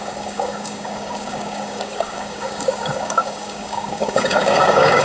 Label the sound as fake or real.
fake